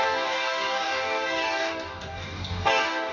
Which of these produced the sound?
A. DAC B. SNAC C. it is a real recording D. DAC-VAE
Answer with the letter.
A